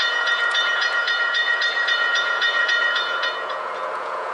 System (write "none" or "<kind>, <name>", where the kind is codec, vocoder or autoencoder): vocoder, Vocos